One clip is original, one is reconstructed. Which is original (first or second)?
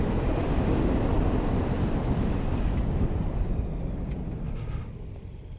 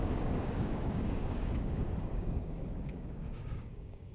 first